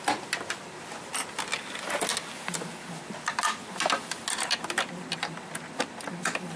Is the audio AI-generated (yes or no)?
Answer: no